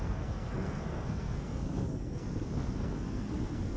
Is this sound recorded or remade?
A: remade